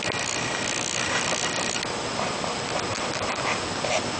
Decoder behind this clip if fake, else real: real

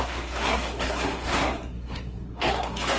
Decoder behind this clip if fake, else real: fake, codec, SNAC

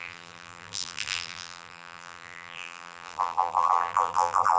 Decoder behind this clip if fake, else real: fake, vocoder, BigVGAN v2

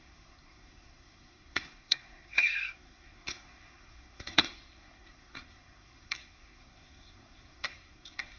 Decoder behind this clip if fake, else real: fake, codec, SNAC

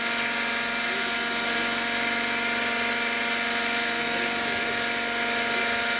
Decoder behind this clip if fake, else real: real